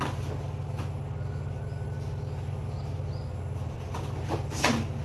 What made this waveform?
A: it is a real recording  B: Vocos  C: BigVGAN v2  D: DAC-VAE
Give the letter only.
A